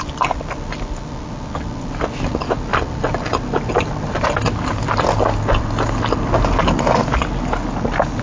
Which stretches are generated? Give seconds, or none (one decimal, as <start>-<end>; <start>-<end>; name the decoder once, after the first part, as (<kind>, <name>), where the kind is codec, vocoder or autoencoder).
none